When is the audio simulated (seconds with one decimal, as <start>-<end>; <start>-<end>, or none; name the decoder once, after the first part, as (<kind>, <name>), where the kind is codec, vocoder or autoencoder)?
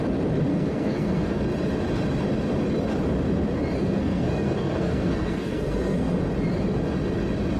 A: 0.5-1.4 (codec, SNAC); 3.8-6.2